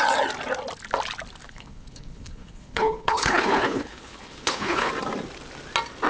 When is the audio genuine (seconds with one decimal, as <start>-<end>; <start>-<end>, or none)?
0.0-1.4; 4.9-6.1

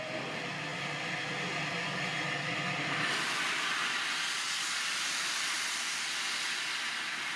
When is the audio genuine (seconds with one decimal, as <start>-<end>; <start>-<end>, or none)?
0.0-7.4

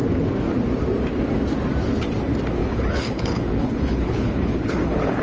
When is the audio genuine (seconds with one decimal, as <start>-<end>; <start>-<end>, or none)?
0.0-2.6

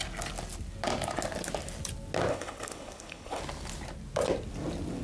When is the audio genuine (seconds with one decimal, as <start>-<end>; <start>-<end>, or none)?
0.0-2.3; 3.4-5.0